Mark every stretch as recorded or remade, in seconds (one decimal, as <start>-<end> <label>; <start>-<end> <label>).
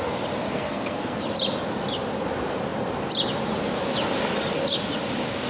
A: 0.0-0.5 recorded; 0.5-1.2 remade; 1.2-5.5 recorded